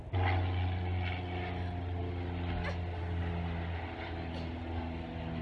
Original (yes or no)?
yes